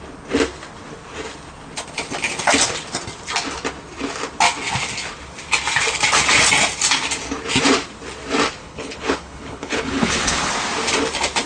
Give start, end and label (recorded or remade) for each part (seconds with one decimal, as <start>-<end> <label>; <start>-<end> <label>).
0.0-8.6 recorded; 8.6-10.5 remade; 10.5-11.5 recorded